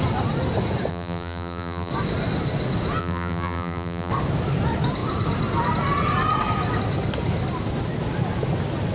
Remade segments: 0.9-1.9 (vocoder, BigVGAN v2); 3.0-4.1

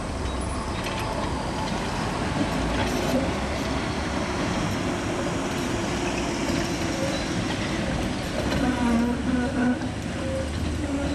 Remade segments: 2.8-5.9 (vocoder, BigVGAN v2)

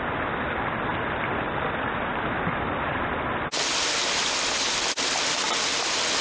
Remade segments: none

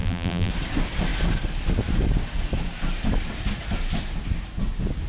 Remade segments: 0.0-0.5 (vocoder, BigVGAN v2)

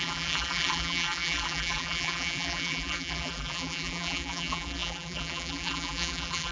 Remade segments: 0.0-6.5 (vocoder, BigVGAN v2)

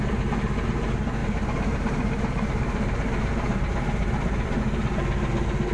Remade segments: 1.2-4.6 (vocoder, BigVGAN v2)